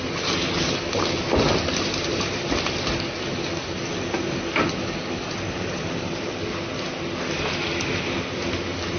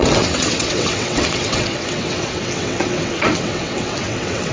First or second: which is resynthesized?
second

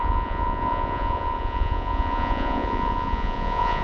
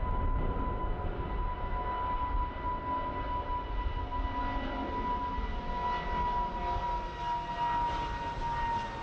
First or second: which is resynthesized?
first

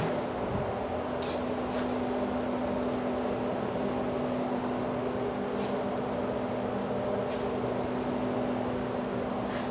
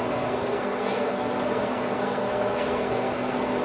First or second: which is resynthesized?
second